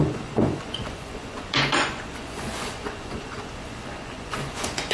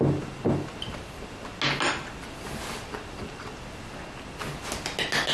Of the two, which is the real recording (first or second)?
second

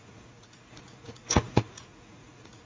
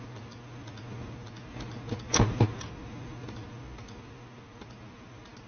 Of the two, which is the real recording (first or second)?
second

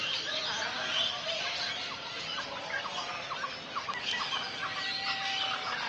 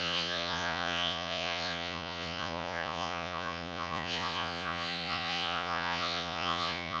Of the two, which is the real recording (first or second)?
first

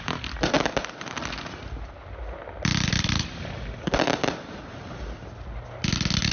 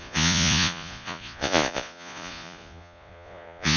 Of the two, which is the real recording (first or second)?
first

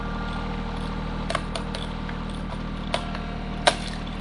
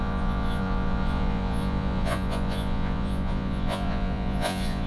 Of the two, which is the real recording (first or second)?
first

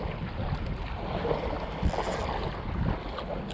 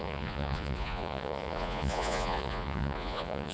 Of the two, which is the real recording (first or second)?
first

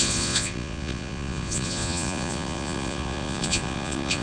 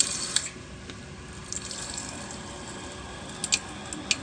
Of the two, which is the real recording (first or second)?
second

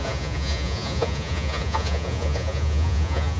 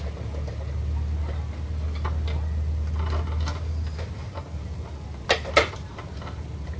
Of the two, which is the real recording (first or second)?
second